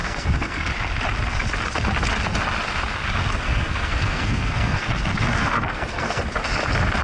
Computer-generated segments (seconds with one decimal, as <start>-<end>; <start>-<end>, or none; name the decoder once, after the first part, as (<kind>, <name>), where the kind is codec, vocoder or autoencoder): 0.0-0.7 (codec, SNAC); 3.2-6.2